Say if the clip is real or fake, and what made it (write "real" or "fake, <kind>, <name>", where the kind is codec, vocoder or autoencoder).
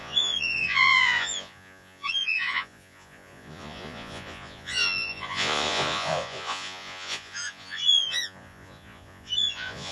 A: fake, vocoder, Vocos